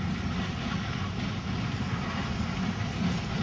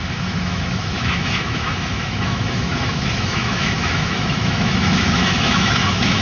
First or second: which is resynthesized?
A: second